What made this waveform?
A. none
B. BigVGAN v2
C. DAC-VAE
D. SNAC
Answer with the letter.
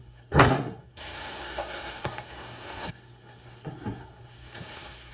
D